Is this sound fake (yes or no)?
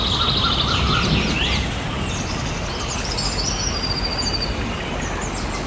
no